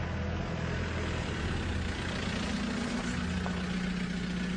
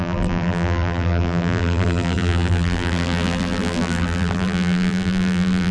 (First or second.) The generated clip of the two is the second